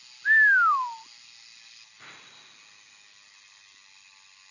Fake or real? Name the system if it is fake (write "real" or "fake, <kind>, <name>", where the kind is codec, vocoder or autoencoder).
real